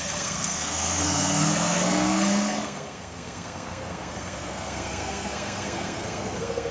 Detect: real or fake fake